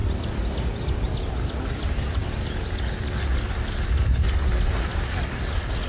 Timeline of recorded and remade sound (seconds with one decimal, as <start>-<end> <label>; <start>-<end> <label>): 0.0-5.9 recorded

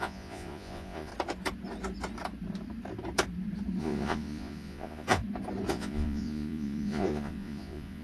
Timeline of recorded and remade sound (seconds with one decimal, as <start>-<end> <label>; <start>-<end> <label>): 0.0-1.1 remade; 1.1-3.8 recorded; 3.8-5.2 remade; 5.2-5.7 recorded; 5.7-8.0 remade

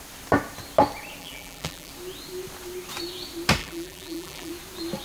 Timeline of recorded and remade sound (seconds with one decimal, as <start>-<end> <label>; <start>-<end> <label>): 0.0-1.2 recorded; 1.2-1.9 remade; 1.9-3.6 recorded; 3.6-4.5 remade; 4.5-5.0 recorded

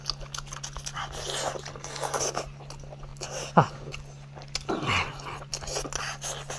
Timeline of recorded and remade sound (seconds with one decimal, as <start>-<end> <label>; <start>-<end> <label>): 0.0-1.7 recorded; 1.7-2.2 remade; 2.2-6.6 recorded

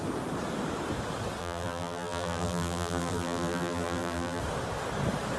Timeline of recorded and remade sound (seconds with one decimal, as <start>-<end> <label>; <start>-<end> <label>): 0.0-1.4 recorded; 1.4-4.4 remade; 4.4-5.4 recorded

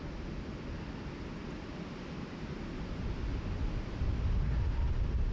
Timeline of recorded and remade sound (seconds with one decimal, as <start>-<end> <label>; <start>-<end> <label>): 0.0-1.7 recorded; 1.7-2.5 remade; 2.5-3.3 recorded; 3.3-4.4 remade; 4.4-5.3 recorded